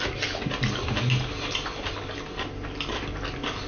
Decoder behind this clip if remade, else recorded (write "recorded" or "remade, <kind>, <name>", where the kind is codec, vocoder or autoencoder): recorded